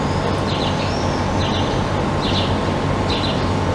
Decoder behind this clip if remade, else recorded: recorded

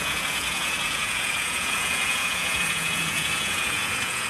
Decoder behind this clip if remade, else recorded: remade, vocoder, Vocos